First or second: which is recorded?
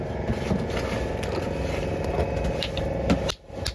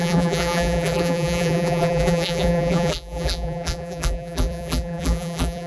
first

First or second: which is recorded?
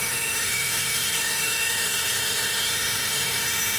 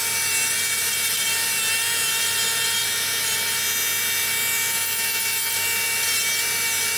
second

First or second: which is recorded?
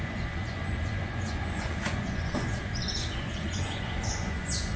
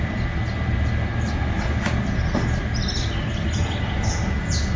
second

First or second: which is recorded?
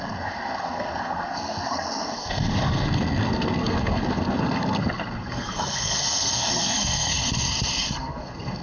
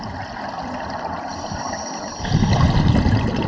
second